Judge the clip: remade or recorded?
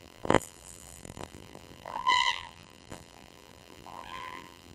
remade